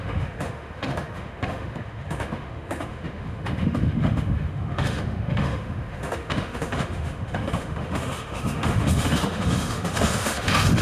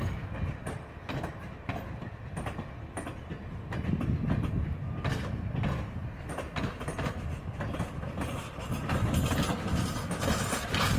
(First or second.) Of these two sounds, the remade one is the first